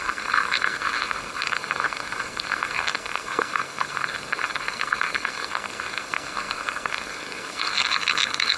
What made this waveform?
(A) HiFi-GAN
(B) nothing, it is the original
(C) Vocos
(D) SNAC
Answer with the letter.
D